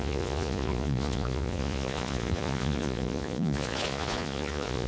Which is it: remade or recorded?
remade